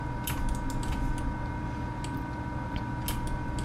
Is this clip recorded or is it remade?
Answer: recorded